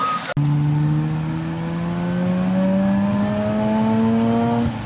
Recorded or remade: recorded